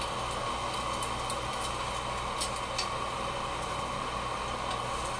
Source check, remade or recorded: recorded